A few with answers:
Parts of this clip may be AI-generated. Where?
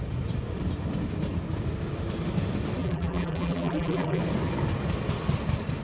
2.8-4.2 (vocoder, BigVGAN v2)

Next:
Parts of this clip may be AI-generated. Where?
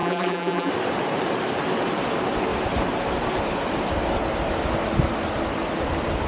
0.0-0.7 (vocoder, BigVGAN v2)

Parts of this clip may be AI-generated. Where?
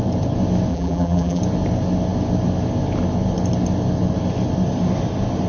0.7-1.4 (vocoder, BigVGAN v2)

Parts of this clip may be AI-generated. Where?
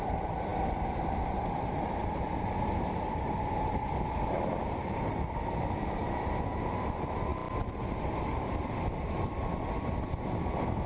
0.0-6.0 (vocoder, BigVGAN v2); 6.7-7.3; 8.6-10.9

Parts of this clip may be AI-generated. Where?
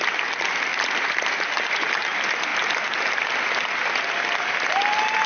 0.7-2.0 (vocoder, BigVGAN v2)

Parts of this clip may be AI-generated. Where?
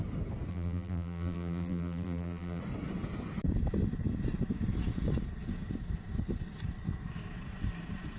0.5-2.6 (vocoder, BigVGAN v2)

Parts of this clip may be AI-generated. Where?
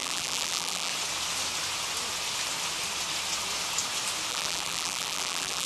0.0-0.9 (vocoder, BigVGAN v2); 4.3-5.7